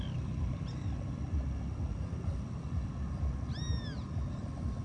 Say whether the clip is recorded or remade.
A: recorded